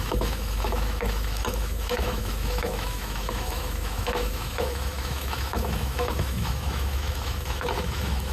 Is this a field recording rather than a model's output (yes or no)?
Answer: no